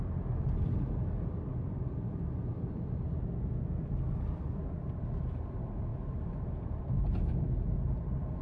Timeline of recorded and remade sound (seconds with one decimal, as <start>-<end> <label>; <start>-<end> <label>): 0.0-1.5 recorded; 1.5-2.0 remade; 2.0-2.5 recorded; 2.5-3.2 remade; 3.2-8.4 recorded